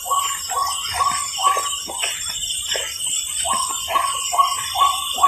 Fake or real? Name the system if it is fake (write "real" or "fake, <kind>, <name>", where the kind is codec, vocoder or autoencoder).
real